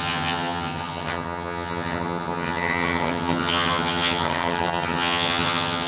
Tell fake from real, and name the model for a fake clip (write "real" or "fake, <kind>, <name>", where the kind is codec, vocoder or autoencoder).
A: fake, vocoder, HiFi-GAN